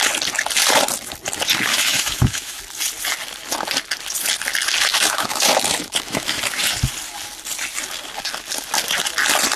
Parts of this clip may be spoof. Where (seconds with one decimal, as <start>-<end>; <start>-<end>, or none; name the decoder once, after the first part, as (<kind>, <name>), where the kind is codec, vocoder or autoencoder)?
1.7-2.6 (autoencoder, DAC-VAE); 4.9-6.4